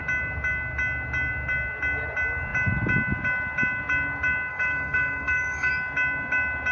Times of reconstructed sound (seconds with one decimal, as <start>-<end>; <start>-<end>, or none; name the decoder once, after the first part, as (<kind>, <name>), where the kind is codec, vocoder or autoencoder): 4.5-5.7 (codec, DAC)